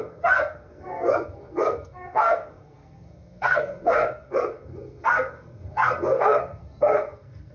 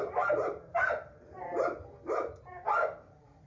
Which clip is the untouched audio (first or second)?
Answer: second